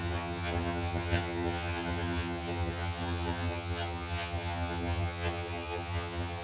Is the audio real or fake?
fake